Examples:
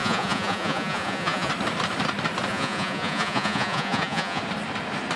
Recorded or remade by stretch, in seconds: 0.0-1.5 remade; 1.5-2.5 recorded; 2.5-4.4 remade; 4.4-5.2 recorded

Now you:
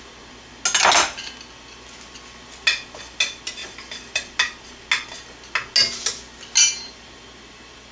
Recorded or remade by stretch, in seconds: 0.0-7.9 recorded

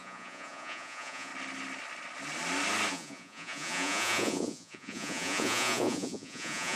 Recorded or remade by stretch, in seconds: 0.0-1.3 remade; 1.3-2.9 recorded; 2.9-6.8 remade